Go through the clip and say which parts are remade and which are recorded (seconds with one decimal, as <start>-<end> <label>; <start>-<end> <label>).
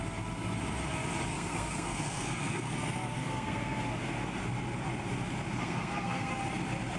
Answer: 0.0-1.3 recorded; 1.3-2.7 remade; 2.7-3.2 recorded; 3.2-3.8 remade; 3.8-5.6 recorded; 5.6-6.3 remade; 6.3-7.0 recorded